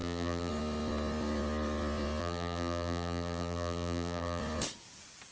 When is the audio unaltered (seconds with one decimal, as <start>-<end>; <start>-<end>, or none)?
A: 0.5-2.2; 4.4-5.3

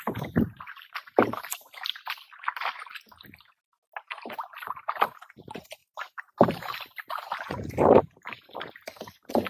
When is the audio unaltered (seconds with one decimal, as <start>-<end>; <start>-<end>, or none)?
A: 0.0-5.8; 6.6-9.5

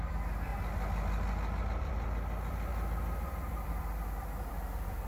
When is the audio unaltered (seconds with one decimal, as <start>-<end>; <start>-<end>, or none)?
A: 0.5-1.6

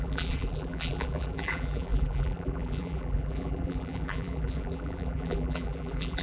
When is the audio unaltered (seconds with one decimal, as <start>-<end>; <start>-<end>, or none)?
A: none

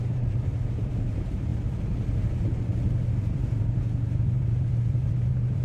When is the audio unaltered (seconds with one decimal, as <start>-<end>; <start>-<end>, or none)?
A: 1.5-3.1